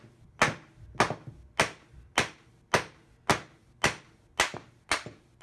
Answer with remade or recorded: recorded